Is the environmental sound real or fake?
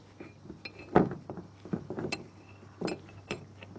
real